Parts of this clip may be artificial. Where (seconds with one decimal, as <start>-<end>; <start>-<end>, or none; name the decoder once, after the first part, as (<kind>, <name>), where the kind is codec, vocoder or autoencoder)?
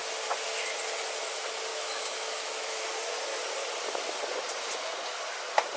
1.7-2.8 (autoencoder, DAC-VAE)